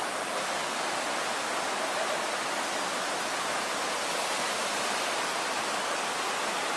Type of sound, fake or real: real